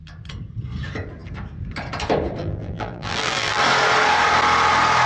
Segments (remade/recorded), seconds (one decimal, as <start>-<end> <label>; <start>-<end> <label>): 0.0-2.4 recorded; 2.4-3.6 remade; 3.6-5.1 recorded